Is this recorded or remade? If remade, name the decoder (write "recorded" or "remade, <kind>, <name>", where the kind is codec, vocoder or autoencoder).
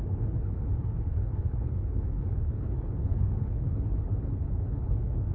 remade, codec, HILCodec